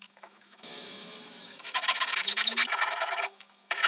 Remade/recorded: remade